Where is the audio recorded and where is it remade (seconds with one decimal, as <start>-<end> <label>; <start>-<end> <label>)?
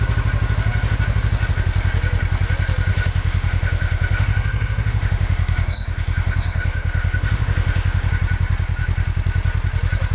0.0-2.9 recorded; 2.9-8.1 remade; 8.1-10.1 recorded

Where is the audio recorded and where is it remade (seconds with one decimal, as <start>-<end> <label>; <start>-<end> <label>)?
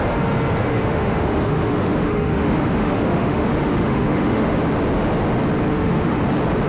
0.0-0.6 recorded; 0.6-4.6 remade; 4.6-5.7 recorded; 5.7-6.2 remade; 6.2-6.7 recorded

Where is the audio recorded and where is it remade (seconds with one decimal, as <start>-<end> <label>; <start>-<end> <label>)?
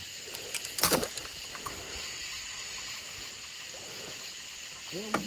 0.0-2.6 recorded; 2.6-3.3 remade; 3.3-5.3 recorded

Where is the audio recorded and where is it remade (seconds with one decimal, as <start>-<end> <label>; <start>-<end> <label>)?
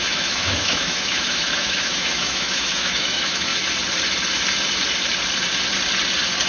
0.0-3.5 remade; 3.5-6.5 recorded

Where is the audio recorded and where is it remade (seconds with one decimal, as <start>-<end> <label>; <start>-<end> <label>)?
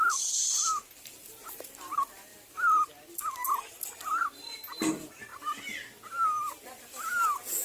0.0-7.6 recorded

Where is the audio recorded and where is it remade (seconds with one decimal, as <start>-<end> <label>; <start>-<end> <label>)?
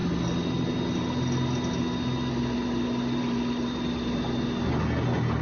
0.0-5.4 recorded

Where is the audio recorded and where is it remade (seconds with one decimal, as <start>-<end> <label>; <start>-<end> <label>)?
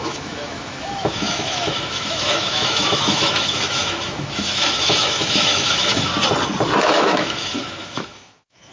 0.0-6.1 remade; 6.1-6.8 recorded; 6.8-8.7 remade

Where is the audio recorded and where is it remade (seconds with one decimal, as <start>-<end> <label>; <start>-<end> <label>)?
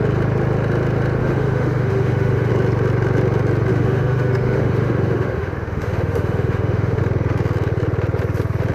0.0-1.2 recorded; 1.2-2.5 remade; 2.5-3.7 recorded; 3.7-7.0 remade; 7.0-8.7 recorded